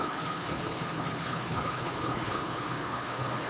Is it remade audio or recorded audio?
remade